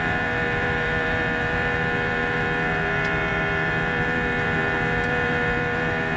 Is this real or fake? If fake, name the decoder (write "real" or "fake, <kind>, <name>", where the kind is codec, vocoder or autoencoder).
fake, vocoder, BigVGAN v2